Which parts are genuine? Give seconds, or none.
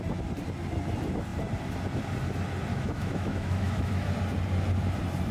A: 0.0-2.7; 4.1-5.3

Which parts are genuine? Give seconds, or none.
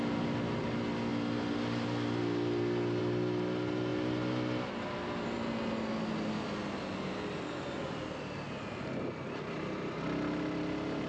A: 0.0-11.1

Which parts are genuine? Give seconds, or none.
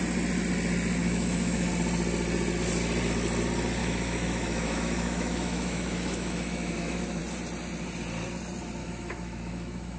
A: 0.0-1.0; 1.7-3.8; 7.2-8.8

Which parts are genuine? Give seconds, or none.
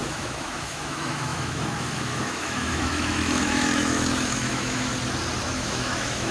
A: 4.9-5.4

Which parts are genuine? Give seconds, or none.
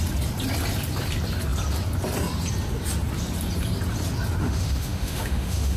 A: 0.0-4.4